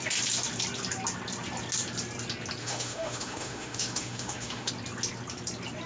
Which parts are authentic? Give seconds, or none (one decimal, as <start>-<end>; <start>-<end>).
0.0-2.6; 4.7-5.9